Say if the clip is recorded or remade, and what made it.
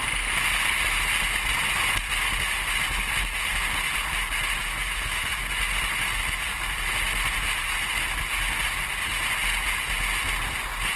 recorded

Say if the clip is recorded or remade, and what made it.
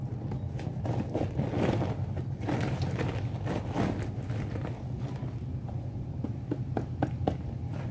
recorded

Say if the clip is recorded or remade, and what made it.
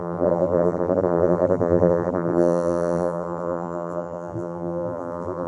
remade, vocoder, BigVGAN v2